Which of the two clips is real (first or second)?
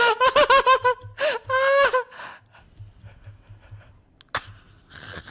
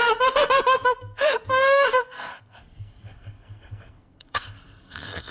first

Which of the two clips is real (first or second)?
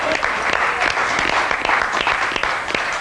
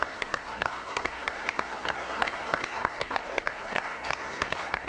first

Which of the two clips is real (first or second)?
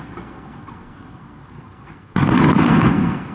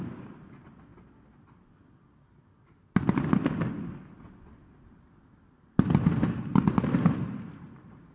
second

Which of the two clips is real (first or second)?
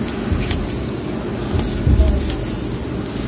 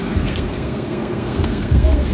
first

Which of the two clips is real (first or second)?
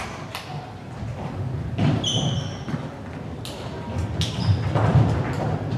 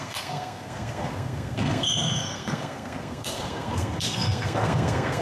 first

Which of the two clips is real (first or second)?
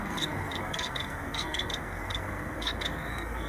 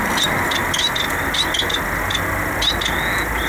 second